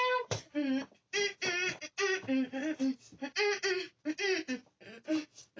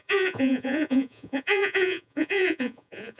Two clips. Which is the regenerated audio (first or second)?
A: second